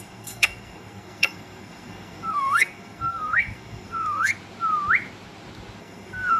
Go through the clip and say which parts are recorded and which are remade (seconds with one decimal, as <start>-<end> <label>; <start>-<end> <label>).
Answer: 0.0-4.3 remade; 4.3-5.8 recorded; 5.8-6.4 remade